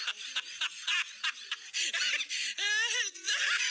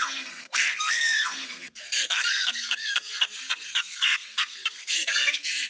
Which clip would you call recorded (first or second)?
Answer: first